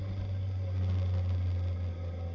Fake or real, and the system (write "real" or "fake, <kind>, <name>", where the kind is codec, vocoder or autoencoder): real